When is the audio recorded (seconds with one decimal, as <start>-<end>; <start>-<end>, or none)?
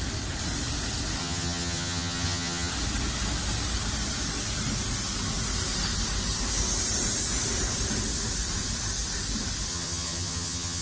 0.0-1.2; 2.7-9.7